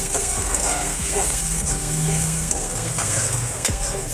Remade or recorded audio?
remade